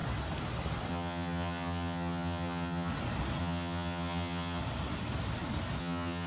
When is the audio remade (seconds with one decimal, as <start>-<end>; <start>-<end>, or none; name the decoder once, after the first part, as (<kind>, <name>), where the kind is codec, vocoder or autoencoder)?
0.9-2.9 (vocoder, HiFi-GAN); 3.4-4.6; 5.8-6.3